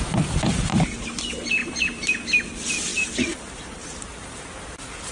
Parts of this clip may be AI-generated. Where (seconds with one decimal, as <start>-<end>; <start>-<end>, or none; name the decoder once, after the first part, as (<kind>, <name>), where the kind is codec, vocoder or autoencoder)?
0.7-1.2 (vocoder, BigVGAN v2); 1.6-2.2; 2.9-4.0